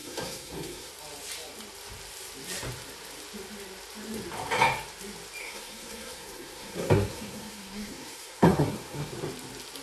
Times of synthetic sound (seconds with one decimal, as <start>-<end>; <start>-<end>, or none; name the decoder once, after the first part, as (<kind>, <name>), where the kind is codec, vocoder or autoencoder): 0.0-0.9 (codec, SNAC); 5.4-9.1